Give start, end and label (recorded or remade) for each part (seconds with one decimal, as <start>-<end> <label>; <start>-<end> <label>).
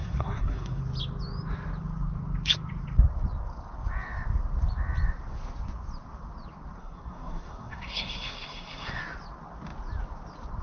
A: 0.0-0.8 remade; 0.8-6.8 recorded; 6.8-9.0 remade; 9.0-10.6 recorded